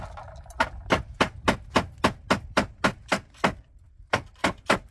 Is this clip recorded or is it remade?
recorded